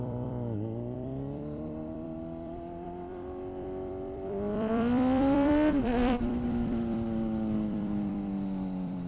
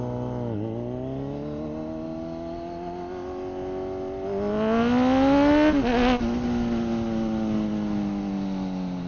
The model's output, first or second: first